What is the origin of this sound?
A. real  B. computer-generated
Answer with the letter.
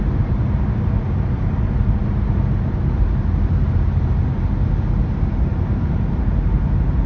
A